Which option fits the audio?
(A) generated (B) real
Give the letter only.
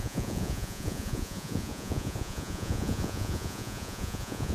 A